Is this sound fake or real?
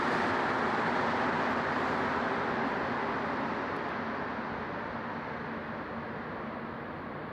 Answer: real